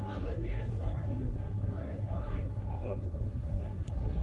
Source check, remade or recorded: remade